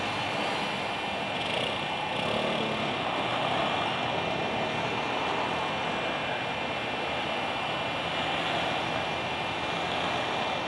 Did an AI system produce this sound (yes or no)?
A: no